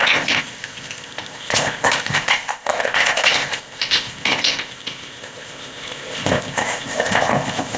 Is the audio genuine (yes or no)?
no